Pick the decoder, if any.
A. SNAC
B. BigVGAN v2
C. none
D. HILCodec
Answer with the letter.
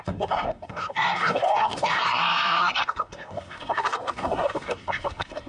A